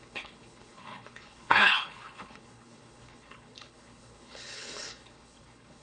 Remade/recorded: remade